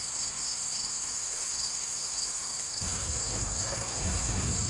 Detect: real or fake fake